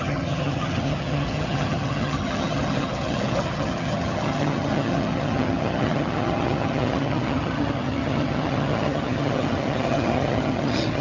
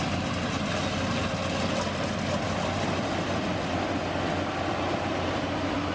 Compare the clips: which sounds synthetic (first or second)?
first